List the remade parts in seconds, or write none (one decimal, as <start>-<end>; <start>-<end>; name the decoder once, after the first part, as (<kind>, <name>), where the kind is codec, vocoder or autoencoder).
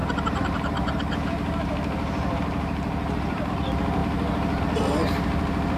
0.0-3.5 (vocoder, BigVGAN v2); 4.0-4.6